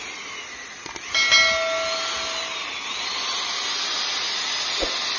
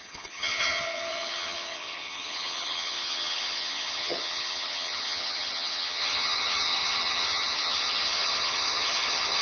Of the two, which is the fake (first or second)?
second